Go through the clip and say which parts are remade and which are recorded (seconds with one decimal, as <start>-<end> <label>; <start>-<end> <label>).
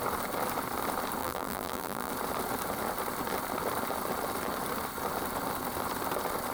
0.0-1.2 recorded; 1.2-2.1 remade; 2.1-6.5 recorded